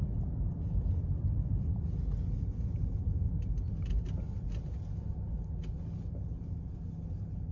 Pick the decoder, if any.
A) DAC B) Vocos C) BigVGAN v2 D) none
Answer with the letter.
D